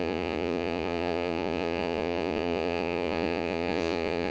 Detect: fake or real fake